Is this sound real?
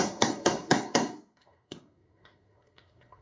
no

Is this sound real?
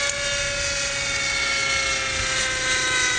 yes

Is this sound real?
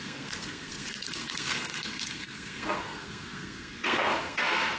no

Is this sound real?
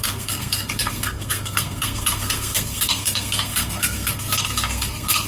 no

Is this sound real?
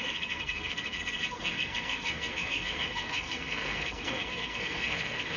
no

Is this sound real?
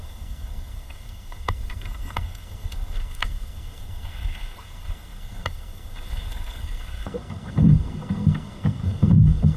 no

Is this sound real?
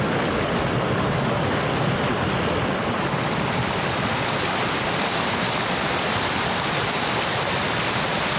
yes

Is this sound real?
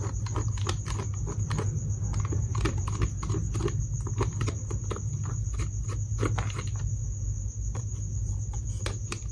yes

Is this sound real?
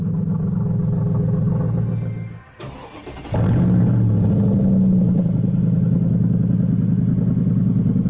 yes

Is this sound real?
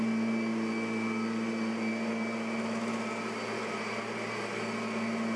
yes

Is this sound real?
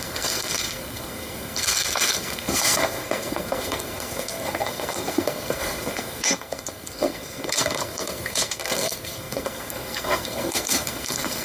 no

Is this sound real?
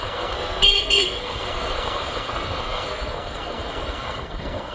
no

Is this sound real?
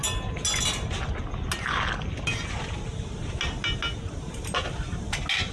yes